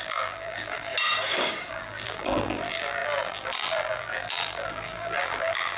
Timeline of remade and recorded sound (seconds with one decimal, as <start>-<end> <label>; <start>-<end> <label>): 0.0-0.9 remade; 0.9-1.7 recorded; 1.7-5.8 remade